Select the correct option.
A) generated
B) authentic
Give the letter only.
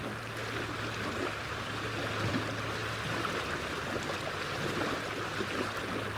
B